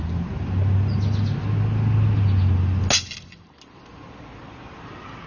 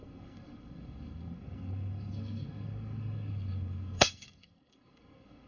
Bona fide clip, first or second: first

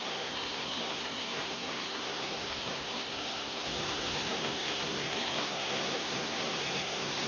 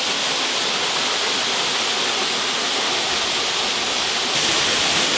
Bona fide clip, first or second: second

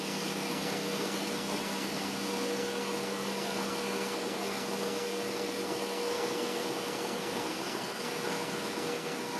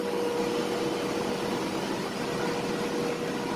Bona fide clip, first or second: second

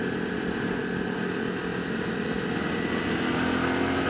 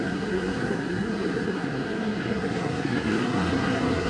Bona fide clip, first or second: first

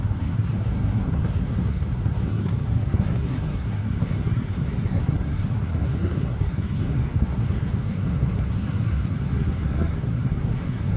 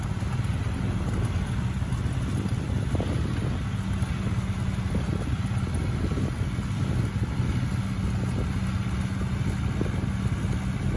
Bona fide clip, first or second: second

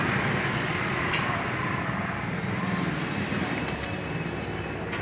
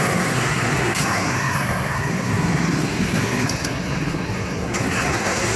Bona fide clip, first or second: first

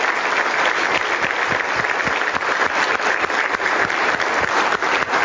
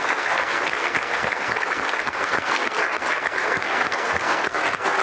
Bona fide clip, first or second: first